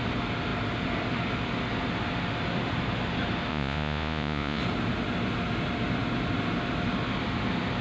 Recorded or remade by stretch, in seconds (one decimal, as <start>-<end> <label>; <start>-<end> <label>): 0.0-3.5 recorded; 3.5-4.6 remade; 4.6-7.8 recorded

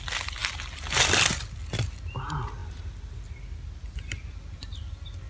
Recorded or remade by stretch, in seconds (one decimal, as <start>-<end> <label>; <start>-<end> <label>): 0.0-5.3 recorded

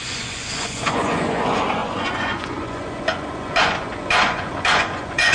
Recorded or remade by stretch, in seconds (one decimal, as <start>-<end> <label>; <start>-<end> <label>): 0.0-5.3 remade

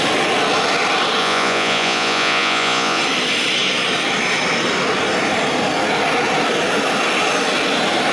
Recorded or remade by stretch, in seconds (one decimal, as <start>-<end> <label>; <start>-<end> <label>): 0.0-1.2 recorded; 1.2-3.0 remade; 3.0-8.1 recorded